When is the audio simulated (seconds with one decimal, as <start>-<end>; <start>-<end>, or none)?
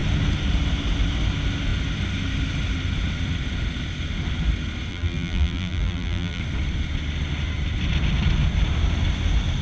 4.9-6.4